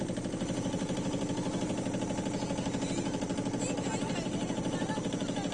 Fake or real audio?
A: real